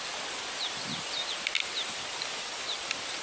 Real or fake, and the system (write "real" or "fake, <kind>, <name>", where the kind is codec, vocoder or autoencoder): real